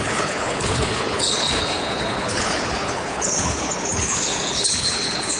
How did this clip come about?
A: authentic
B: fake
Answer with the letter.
B